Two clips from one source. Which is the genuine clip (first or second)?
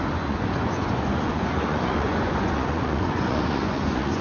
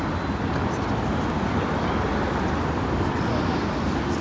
second